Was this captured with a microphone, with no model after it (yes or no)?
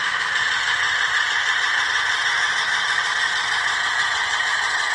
no